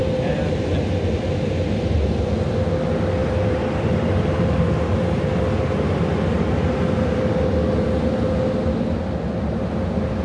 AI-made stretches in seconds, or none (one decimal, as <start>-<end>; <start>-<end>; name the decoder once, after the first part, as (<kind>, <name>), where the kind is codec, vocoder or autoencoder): 0.0-0.7 (vocoder, BigVGAN v2); 3.2-4.8